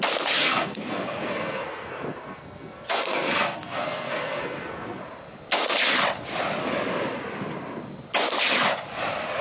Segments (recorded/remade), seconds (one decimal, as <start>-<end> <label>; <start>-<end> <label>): 0.0-0.4 recorded; 0.4-5.0 remade; 5.0-9.4 recorded